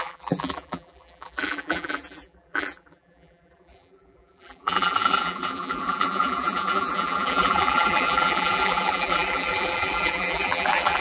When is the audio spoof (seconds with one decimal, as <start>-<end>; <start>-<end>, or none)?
0.0-11.0